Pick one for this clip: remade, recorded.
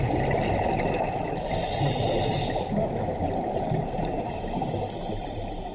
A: recorded